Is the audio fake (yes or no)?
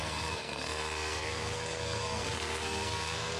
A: yes